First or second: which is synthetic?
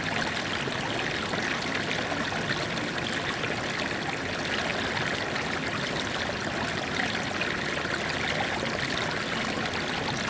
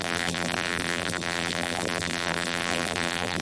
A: second